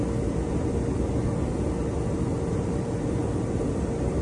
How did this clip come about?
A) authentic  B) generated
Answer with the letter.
A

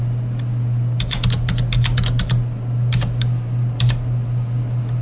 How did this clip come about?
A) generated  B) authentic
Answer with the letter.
B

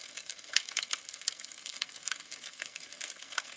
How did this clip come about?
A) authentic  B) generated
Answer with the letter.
B